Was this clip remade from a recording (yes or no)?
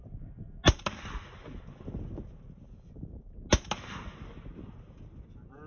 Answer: no